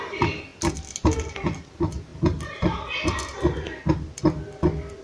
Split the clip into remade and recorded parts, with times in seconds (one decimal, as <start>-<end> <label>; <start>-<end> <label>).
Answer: 0.0-5.0 recorded